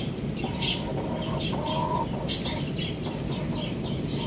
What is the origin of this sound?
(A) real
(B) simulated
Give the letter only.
A